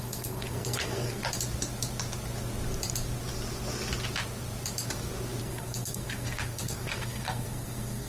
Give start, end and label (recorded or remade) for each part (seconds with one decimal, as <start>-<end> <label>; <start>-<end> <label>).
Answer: 0.0-1.2 remade; 1.2-5.4 recorded; 5.4-8.1 remade